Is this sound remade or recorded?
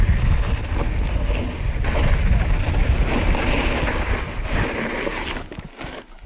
recorded